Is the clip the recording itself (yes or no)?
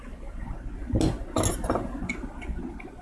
yes